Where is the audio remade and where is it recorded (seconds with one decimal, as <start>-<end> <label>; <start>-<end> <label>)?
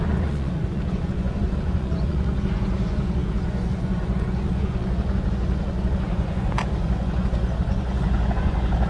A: 0.0-8.9 remade